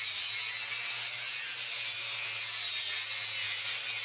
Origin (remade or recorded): recorded